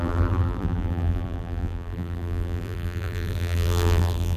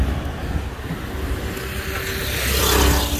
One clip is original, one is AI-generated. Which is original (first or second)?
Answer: second